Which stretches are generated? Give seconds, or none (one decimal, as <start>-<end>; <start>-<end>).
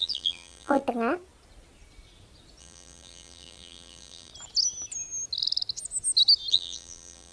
0.0-0.8; 2.6-4.3; 6.5-7.3